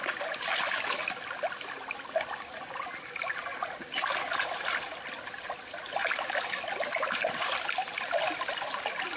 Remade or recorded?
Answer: recorded